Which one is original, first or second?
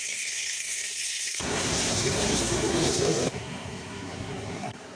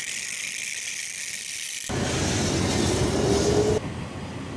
second